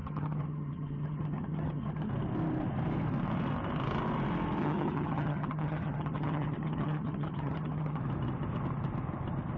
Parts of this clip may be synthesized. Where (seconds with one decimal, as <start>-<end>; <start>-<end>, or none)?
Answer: 0.0-2.1; 4.6-8.0